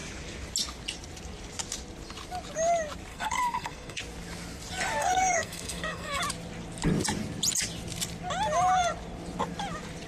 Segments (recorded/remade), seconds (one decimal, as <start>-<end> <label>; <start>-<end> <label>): 0.0-3.1 recorded; 3.1-4.0 remade; 4.0-5.0 recorded; 5.0-6.2 remade; 6.2-10.1 recorded